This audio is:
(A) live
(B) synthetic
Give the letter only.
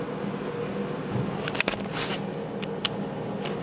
A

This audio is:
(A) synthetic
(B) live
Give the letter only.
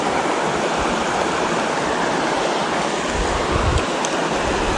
B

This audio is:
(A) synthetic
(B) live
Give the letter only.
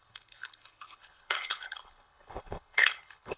A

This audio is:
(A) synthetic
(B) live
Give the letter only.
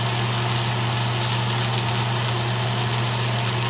B